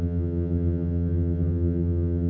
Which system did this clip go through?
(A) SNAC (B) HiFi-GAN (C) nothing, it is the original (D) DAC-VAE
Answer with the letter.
B